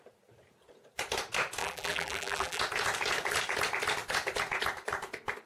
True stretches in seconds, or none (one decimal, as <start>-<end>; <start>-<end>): 0.0-1.6; 2.6-5.5